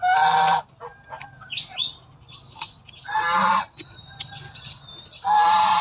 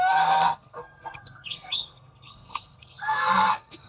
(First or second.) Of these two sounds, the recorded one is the first